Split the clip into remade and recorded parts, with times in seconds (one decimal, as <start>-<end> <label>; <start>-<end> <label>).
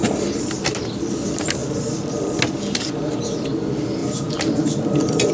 0.0-5.3 recorded